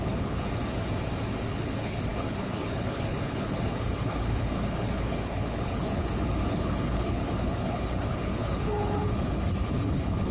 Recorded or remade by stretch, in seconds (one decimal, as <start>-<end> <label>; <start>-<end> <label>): 0.0-0.6 remade; 0.6-1.5 recorded; 1.5-10.3 remade